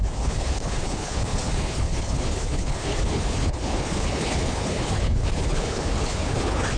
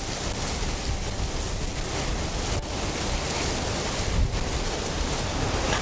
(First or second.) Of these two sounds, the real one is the second